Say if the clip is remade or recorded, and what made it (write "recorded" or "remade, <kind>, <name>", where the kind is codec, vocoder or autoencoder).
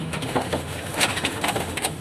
remade, autoencoder, DAC-VAE